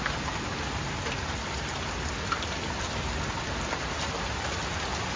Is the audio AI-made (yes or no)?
no